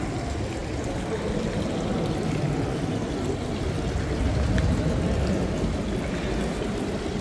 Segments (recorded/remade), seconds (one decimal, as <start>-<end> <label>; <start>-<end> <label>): 0.0-7.2 recorded